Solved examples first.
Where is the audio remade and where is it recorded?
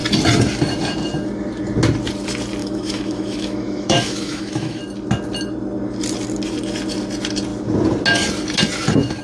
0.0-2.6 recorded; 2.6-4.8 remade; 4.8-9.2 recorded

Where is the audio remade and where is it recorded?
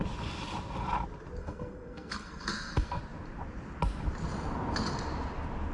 0.0-1.4 recorded; 1.4-3.0 remade; 3.0-5.7 recorded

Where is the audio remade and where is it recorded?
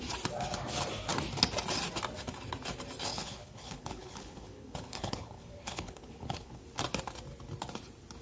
0.0-3.1 recorded; 3.1-6.6 remade; 6.6-8.2 recorded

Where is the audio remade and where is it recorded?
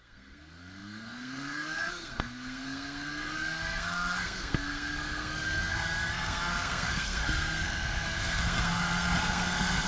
0.0-9.9 remade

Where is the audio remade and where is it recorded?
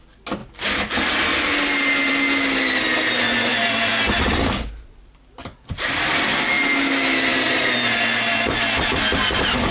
0.0-9.7 recorded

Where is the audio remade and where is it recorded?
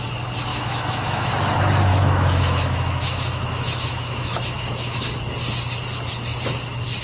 0.0-0.5 recorded; 0.5-1.3 remade; 1.3-1.9 recorded; 1.9-5.1 remade; 5.1-7.0 recorded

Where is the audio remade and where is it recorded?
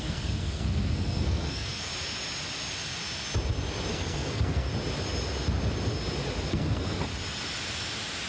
0.0-1.9 remade; 1.9-3.9 recorded; 3.9-4.7 remade; 4.7-6.5 recorded; 6.5-7.1 remade; 7.1-8.3 recorded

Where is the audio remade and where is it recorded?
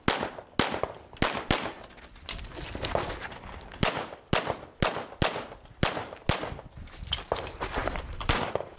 0.0-7.8 recorded; 7.8-8.8 remade